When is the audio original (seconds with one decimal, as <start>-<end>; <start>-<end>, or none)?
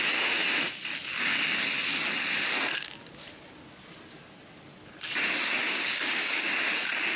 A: 0.0-5.6; 6.5-7.2